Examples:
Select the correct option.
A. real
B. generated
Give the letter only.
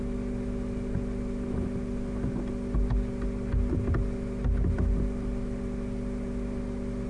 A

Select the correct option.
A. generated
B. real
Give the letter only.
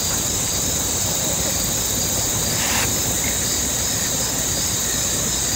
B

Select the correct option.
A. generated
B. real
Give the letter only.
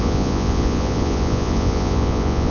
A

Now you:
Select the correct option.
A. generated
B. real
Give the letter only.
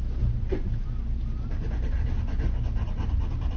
B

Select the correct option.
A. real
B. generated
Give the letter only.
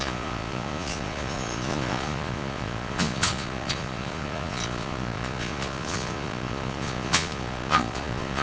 B